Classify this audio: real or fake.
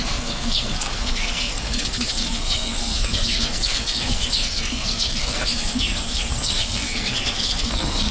fake